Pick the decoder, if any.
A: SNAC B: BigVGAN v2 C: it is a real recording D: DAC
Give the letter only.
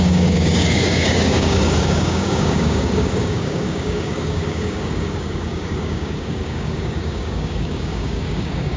D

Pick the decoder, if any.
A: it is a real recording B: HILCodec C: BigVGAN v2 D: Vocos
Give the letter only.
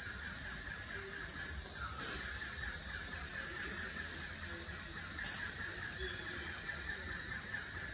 A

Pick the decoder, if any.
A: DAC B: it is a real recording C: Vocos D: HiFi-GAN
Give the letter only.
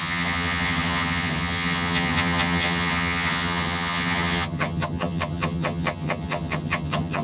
D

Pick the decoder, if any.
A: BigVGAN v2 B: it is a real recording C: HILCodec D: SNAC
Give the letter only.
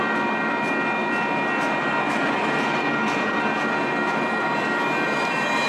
B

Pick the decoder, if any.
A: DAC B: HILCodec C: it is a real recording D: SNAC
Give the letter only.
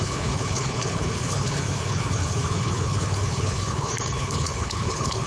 B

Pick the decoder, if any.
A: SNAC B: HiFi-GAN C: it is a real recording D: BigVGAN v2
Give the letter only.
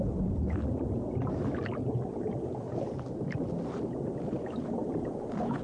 C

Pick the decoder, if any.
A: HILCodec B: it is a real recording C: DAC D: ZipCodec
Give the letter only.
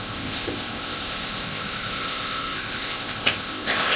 D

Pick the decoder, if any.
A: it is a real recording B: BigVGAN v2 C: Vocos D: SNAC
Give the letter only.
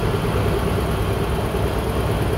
A